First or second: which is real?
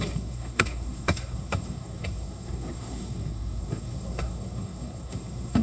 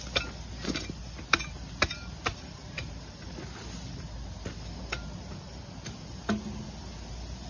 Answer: second